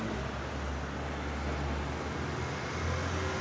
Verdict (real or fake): real